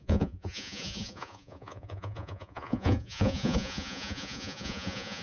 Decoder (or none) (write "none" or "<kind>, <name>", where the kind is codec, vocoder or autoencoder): vocoder, Vocos